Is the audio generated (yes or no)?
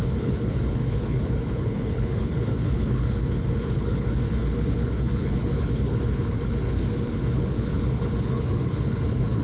yes